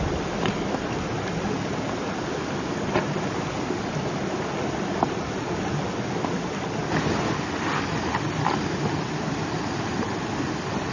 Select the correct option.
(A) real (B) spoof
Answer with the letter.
A